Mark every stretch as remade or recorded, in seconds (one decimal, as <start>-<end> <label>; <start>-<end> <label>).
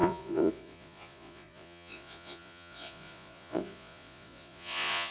0.0-5.1 remade